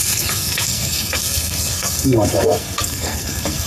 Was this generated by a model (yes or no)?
yes